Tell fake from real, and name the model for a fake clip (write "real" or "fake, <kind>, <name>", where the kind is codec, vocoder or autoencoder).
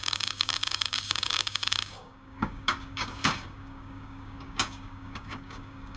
fake, codec, DAC